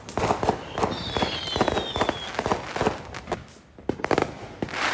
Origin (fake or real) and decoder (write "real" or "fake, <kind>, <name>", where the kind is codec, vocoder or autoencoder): real